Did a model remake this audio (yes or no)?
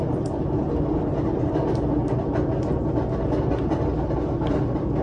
no